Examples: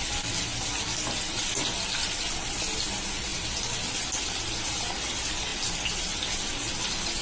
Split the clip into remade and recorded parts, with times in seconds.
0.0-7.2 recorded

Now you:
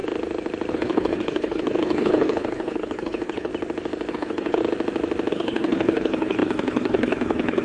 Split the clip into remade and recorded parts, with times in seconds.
0.0-0.7 recorded; 0.7-3.5 remade; 3.5-4.1 recorded; 4.1-4.6 remade; 4.6-5.3 recorded; 5.3-7.6 remade

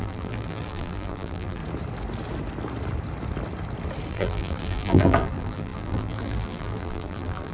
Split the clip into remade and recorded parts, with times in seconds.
0.0-1.6 remade; 1.6-4.1 recorded; 4.1-7.5 remade

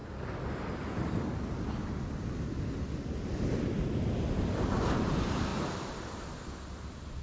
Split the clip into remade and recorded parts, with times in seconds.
0.0-7.2 recorded

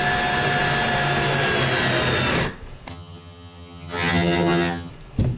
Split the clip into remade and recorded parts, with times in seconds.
0.0-2.9 recorded; 2.9-4.9 remade; 4.9-5.4 recorded

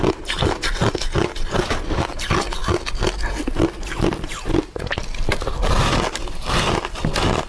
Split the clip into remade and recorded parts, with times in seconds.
0.0-7.5 recorded